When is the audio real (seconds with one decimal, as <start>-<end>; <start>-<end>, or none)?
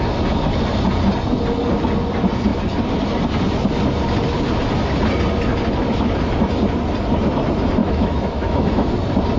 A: 0.0-7.8; 8.9-9.4